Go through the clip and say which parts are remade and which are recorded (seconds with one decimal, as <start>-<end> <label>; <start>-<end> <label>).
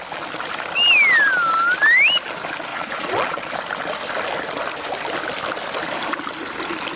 0.0-2.7 recorded; 2.7-3.5 remade; 3.5-7.0 recorded